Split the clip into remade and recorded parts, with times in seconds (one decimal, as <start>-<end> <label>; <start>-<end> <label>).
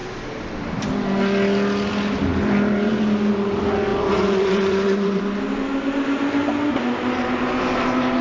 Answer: 0.0-3.9 recorded; 3.9-5.2 remade; 5.2-8.2 recorded